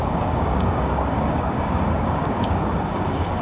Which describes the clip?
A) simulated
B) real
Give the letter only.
A